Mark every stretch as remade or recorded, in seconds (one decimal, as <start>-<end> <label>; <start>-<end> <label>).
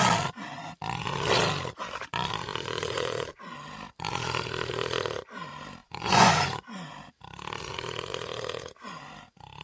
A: 0.0-2.5 recorded; 2.5-3.4 remade; 3.4-5.8 recorded; 5.8-6.9 remade; 6.9-9.6 recorded